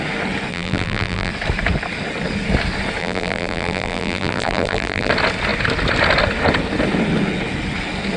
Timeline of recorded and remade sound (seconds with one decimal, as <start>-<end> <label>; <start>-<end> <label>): 0.0-0.5 recorded; 0.5-1.3 remade; 1.3-3.0 recorded; 3.0-5.1 remade; 5.1-8.2 recorded